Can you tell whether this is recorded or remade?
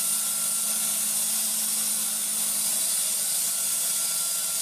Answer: recorded